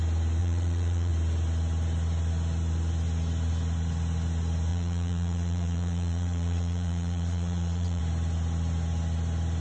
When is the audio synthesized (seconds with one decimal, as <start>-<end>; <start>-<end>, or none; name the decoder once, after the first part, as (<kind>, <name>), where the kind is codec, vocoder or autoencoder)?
0.4-1.1 (vocoder, Vocos); 4.7-8.0